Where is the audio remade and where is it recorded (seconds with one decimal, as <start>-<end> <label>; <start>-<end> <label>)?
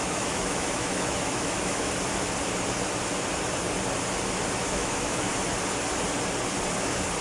0.0-1.9 remade; 1.9-4.6 recorded; 4.6-5.3 remade; 5.3-7.2 recorded